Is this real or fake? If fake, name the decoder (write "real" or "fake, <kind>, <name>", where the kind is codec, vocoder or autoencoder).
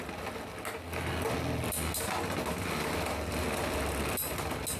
real